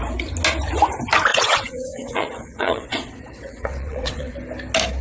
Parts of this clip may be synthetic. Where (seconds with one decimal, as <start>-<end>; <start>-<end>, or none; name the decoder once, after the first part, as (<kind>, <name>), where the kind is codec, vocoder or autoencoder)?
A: 1.3-4.3 (vocoder, WaveNeXt)